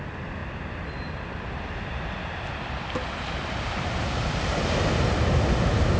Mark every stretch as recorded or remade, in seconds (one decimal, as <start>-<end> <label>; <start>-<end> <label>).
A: 0.0-6.0 recorded